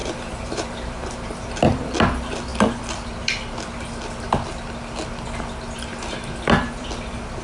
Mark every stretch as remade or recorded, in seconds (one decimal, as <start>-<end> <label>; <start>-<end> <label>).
0.0-1.5 remade; 1.5-7.4 recorded